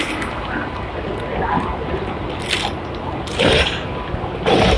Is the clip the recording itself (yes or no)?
yes